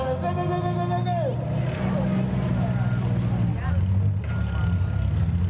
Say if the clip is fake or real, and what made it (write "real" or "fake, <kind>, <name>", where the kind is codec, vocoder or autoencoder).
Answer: real